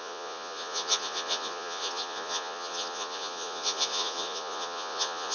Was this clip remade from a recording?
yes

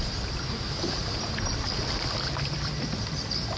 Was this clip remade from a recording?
no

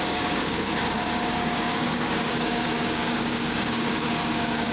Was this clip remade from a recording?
yes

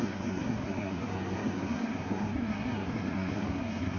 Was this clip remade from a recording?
yes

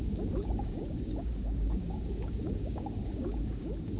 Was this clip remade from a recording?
yes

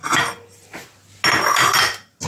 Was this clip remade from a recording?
no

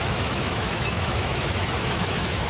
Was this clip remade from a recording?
yes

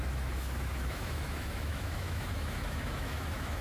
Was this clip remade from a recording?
yes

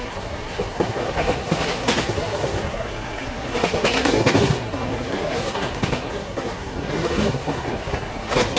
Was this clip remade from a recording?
yes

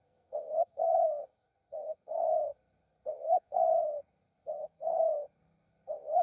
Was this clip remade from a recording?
yes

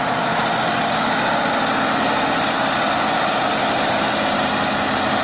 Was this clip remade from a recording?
no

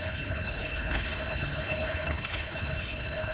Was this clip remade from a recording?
yes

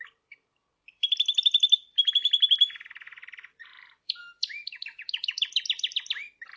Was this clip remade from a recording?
yes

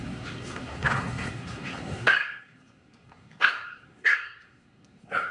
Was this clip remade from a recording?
yes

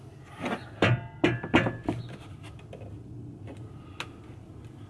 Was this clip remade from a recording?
no